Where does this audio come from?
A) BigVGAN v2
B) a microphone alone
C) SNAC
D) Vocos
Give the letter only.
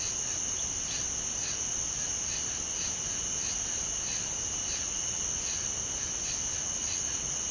B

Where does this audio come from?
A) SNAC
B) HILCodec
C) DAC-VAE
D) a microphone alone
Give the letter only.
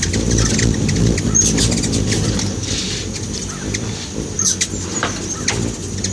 D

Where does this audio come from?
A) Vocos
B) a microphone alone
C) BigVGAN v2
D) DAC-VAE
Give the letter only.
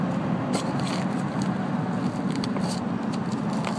B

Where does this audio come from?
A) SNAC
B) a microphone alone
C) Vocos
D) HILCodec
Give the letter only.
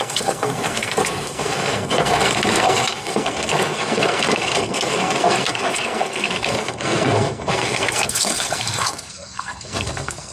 A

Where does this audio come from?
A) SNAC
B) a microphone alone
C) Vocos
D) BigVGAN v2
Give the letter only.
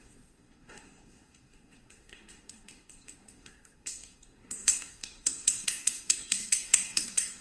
A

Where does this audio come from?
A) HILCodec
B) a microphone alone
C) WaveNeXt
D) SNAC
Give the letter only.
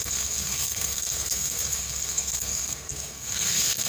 D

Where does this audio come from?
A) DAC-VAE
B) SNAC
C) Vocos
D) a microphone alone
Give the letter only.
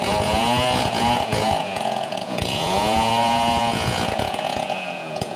C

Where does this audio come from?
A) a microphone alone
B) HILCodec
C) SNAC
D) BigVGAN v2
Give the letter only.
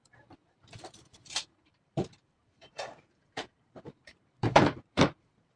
D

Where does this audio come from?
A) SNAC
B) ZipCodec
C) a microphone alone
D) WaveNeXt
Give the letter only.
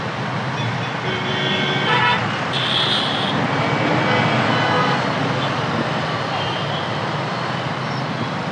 C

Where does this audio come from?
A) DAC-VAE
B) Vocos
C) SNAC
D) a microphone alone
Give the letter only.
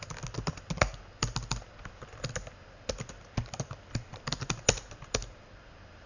D